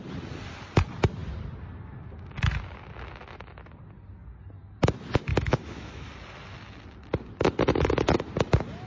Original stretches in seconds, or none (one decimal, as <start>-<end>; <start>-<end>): 0.0-5.3; 6.1-8.9